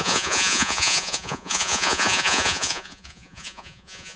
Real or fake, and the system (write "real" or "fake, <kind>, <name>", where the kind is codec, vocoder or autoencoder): fake, vocoder, Vocos